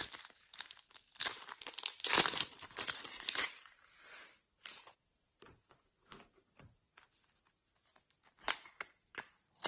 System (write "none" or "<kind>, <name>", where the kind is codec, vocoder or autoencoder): vocoder, BigVGAN v2